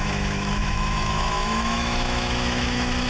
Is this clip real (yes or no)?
no